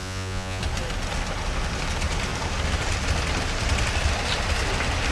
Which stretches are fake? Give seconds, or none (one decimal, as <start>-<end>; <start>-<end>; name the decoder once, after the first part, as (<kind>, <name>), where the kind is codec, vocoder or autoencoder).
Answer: 0.0-0.6 (vocoder, Vocos)